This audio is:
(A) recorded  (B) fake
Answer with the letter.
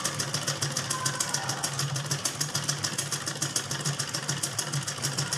A